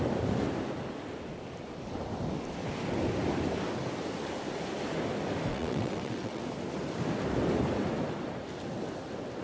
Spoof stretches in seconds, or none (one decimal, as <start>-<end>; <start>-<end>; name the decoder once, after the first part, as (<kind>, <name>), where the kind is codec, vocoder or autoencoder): 5.5-6.4 (vocoder, WaveNeXt)